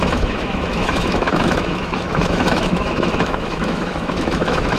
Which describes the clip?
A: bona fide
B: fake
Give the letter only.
B